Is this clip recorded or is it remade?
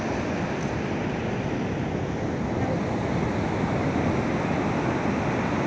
recorded